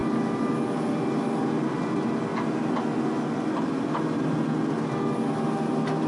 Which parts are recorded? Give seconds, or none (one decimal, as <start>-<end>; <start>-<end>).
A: 0.0-6.1

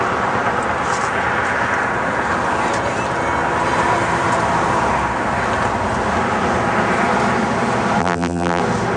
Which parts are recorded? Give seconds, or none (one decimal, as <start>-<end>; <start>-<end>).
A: 0.0-8.0; 8.6-9.0

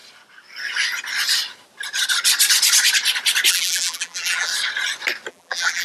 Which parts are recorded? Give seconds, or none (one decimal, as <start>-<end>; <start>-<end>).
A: 0.0-3.5; 4.5-5.3

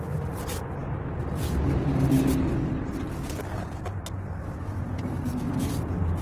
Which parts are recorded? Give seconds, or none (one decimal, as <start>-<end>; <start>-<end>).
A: 0.0-4.8; 5.6-6.2

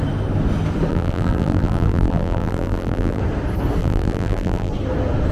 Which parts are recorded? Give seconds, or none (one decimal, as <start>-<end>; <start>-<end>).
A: 0.0-0.9; 3.2-3.8; 4.7-5.3

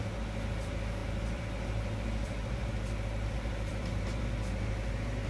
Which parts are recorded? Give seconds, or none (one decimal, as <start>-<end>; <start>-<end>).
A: 0.0-1.0; 4.2-5.3

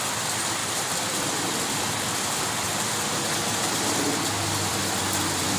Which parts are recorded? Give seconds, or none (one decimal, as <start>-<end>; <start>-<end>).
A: 0.0-0.6; 4.0-4.7

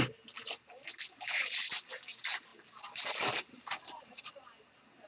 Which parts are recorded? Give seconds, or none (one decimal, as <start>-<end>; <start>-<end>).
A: 0.0-2.5; 4.2-5.1